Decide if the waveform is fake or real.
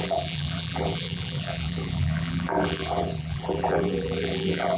fake